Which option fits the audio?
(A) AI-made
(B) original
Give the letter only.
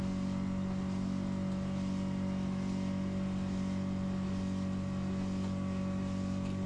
B